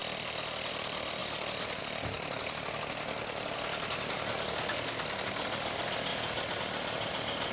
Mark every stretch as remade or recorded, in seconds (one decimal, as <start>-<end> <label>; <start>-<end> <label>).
0.0-7.5 recorded